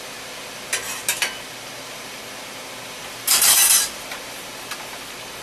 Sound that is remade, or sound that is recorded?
recorded